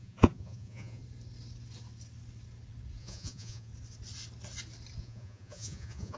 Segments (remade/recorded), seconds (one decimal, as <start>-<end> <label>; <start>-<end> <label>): 0.0-1.0 remade; 1.0-3.0 recorded; 3.0-3.7 remade; 3.7-5.0 recorded; 5.0-6.2 remade